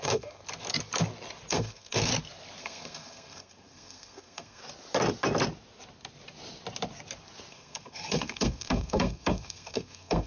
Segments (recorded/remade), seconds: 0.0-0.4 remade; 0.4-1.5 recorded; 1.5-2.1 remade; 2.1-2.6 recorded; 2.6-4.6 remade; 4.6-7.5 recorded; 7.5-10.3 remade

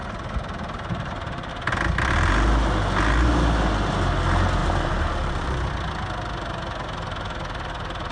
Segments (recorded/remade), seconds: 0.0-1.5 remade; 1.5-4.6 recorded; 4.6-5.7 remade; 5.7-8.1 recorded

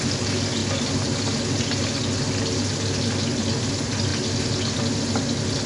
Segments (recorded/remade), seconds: 0.0-5.7 recorded

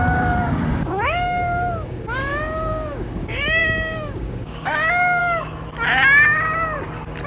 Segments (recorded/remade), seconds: 0.0-5.2 remade; 5.2-7.3 recorded

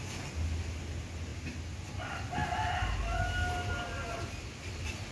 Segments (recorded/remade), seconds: 0.0-5.1 recorded

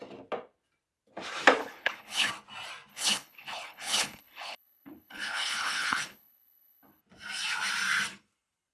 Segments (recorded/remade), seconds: 0.0-1.6 recorded; 1.6-2.3 remade; 2.3-2.9 recorded; 2.9-7.0 remade; 7.0-8.7 recorded

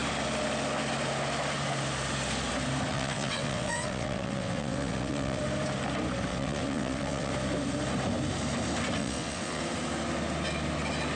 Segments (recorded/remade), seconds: 0.0-2.9 recorded; 2.9-5.4 remade; 5.4-6.3 recorded; 6.3-7.3 remade; 7.3-9.0 recorded; 9.0-9.6 remade; 9.6-11.2 recorded

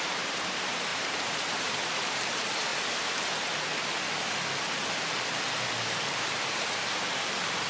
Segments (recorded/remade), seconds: 0.0-2.7 remade; 2.7-6.0 recorded; 6.0-7.7 remade